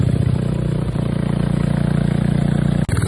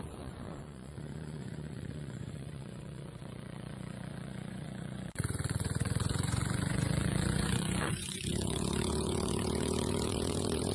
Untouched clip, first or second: first